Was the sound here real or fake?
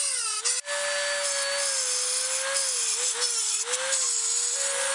real